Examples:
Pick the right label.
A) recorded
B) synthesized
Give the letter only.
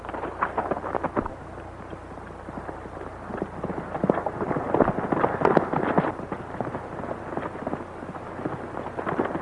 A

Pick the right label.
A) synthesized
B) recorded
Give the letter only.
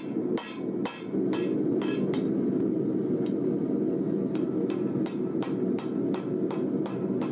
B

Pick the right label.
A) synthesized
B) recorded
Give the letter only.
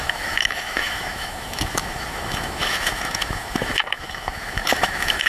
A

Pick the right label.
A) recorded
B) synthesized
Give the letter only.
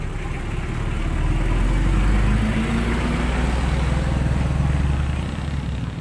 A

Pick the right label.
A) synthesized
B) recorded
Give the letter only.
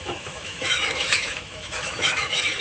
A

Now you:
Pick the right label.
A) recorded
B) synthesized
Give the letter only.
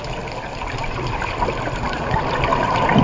A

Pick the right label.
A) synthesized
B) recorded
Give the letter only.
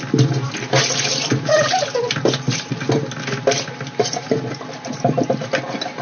B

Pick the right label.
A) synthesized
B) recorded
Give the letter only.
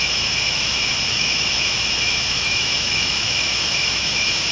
A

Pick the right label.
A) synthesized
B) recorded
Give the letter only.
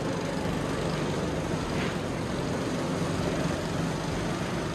B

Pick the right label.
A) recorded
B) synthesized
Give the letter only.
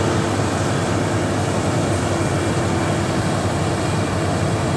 A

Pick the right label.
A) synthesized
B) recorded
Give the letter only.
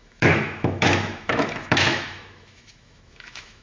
A